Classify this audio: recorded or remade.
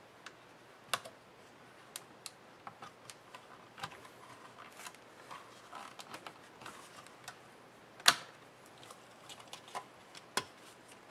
recorded